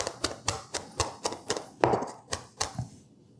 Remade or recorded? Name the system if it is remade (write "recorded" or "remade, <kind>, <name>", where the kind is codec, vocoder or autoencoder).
recorded